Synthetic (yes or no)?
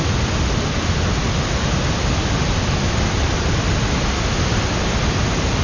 no